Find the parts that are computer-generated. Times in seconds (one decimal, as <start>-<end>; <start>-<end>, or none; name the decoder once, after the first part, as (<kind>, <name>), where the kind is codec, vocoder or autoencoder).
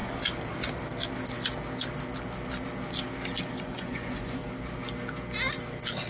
3.5-4.4 (vocoder, Vocos)